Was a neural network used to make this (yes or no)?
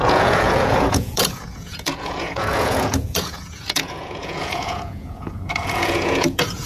yes